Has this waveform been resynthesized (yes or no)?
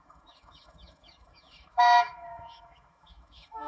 yes